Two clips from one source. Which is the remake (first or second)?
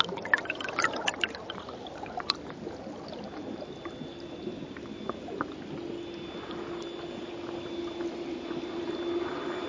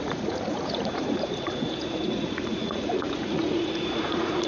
second